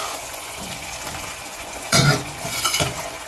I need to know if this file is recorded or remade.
remade